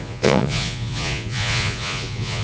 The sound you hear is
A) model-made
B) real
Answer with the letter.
A